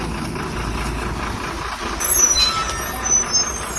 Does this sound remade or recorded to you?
recorded